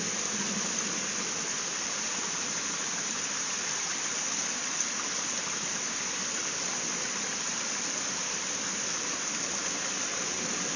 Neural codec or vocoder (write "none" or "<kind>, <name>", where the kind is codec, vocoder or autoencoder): none